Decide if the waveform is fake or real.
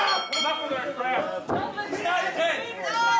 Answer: real